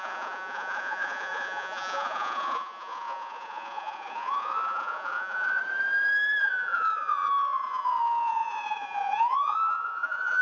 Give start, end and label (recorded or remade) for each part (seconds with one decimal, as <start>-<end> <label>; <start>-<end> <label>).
0.0-5.6 remade; 5.6-6.4 recorded; 6.4-10.4 remade